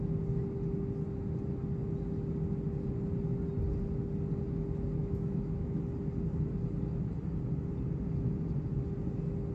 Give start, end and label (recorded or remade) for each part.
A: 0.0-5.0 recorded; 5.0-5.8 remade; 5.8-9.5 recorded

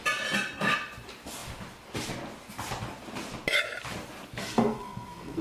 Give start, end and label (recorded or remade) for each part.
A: 0.0-4.4 recorded; 4.4-5.4 remade

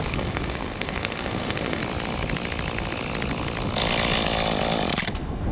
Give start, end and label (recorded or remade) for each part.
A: 0.0-1.8 remade; 1.8-5.1 recorded; 5.1-5.5 remade

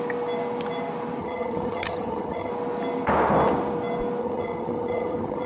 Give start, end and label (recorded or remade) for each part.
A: 0.0-1.2 recorded; 1.2-2.5 remade; 2.5-4.2 recorded; 4.2-5.5 remade

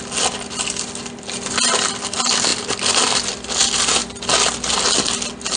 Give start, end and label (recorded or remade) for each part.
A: 0.0-5.6 recorded